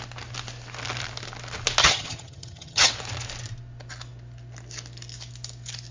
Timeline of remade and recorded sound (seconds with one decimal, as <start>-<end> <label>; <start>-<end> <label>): 0.0-1.8 recorded; 1.8-2.9 remade; 2.9-5.9 recorded